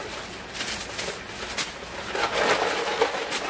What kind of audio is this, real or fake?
real